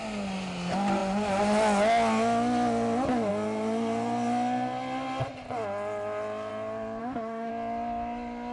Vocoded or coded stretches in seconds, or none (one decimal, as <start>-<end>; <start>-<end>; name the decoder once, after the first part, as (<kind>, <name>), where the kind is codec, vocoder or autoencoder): 7.0-7.5 (autoencoder, DAC-VAE)